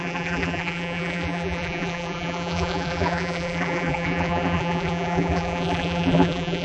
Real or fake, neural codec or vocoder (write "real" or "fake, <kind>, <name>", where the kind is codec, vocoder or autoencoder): fake, vocoder, BigVGAN v2